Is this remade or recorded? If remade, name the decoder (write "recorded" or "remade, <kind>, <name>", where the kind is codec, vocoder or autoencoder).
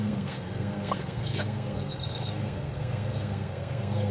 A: remade, codec, SNAC